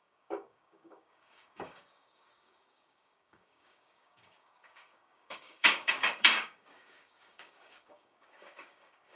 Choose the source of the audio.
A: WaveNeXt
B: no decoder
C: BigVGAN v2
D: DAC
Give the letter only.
D